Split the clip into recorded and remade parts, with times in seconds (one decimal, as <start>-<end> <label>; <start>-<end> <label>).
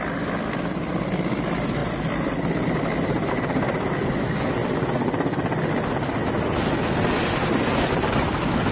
0.0-8.7 recorded